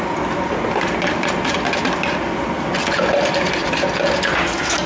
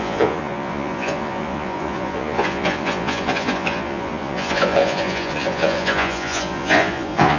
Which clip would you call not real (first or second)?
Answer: second